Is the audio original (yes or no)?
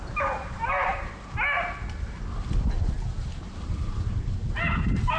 yes